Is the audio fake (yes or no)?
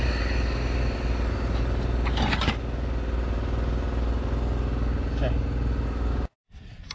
no